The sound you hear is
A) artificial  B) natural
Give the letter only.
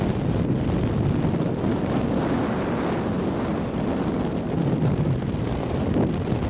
B